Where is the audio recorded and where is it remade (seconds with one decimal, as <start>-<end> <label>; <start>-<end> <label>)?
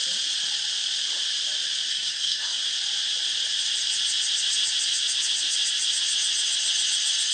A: 0.0-1.9 recorded; 1.9-2.6 remade; 2.6-7.3 recorded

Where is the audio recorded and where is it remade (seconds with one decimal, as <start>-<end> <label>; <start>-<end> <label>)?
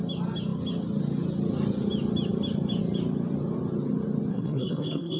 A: 0.0-4.3 recorded; 4.3-5.2 remade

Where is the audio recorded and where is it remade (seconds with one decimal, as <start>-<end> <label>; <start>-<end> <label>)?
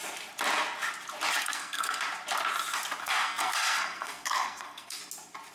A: 0.0-1.4 recorded; 1.4-2.0 remade; 2.0-3.0 recorded; 3.0-5.0 remade; 5.0-5.5 recorded